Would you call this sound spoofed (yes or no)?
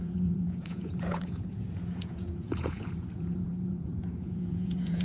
yes